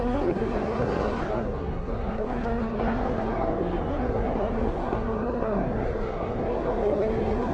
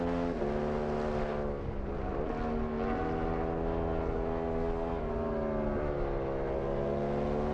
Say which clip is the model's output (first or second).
first